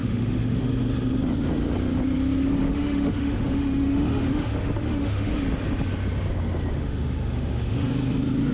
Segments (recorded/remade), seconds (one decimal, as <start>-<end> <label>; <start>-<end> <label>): 0.0-0.6 remade; 0.6-2.6 recorded; 2.6-5.3 remade; 5.3-6.7 recorded; 6.7-7.9 remade; 7.9-8.5 recorded

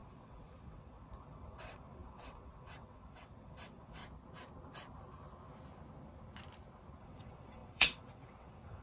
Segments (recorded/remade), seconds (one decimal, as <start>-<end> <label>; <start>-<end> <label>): 0.0-4.0 remade; 4.0-7.0 recorded; 7.0-8.8 remade

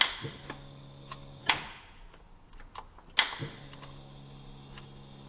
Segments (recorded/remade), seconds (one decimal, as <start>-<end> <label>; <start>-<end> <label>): 0.0-1.4 recorded; 1.4-2.2 remade; 2.2-5.3 recorded